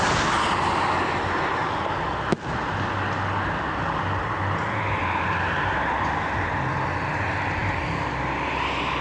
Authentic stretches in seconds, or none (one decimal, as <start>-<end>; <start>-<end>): 0.0-9.0